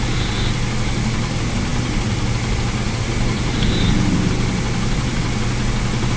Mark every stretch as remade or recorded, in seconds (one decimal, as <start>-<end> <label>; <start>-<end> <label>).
0.0-6.2 recorded